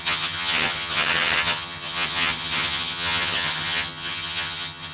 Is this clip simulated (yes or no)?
yes